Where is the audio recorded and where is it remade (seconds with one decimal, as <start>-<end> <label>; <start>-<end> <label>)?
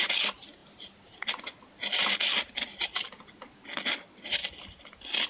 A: 0.0-5.3 recorded